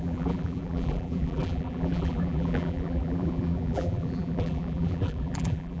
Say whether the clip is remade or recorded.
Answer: remade